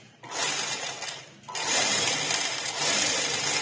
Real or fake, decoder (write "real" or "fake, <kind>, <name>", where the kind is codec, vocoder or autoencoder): real